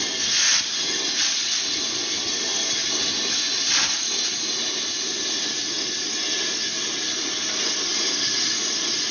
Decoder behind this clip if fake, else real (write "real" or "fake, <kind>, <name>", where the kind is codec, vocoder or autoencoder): real